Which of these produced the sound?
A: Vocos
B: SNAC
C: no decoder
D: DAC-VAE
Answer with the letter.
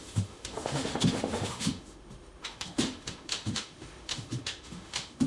D